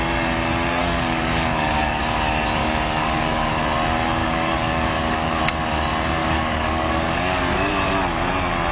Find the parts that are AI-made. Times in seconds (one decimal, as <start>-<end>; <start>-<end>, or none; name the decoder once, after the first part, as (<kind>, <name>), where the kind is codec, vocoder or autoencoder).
0.8-2.0 (codec, DAC); 2.6-3.6; 4.2-5.4; 6.2-7.7